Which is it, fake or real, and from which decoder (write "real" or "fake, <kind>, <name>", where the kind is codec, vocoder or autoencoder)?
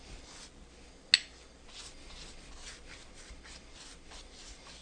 real